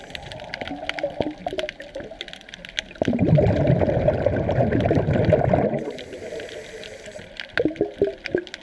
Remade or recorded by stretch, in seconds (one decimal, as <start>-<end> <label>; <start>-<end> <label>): 0.0-8.6 recorded